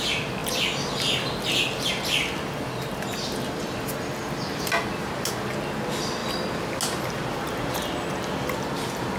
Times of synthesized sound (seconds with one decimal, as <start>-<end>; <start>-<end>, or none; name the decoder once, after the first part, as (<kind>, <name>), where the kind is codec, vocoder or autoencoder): none

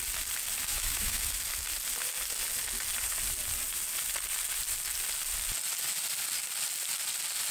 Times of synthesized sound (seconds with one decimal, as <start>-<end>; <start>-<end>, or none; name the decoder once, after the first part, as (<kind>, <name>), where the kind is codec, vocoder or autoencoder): 0.7-1.3 (autoencoder, DAC-VAE)

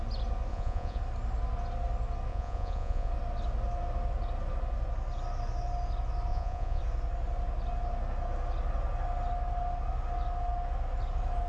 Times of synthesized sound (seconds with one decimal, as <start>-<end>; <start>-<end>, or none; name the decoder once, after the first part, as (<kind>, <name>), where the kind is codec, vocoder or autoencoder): 0.5-1.0 (vocoder, Vocos); 2.3-3.1; 6.3-6.8

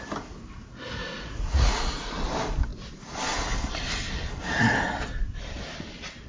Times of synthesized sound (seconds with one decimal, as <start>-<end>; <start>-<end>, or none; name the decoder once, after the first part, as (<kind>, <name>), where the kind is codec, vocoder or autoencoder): 1.0-1.9 (vocoder, Vocos)